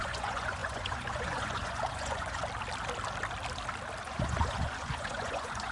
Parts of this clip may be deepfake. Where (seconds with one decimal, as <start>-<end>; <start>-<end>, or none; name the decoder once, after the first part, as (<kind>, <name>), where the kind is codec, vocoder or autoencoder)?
0.0-2.4 (vocoder, Vocos); 4.0-5.7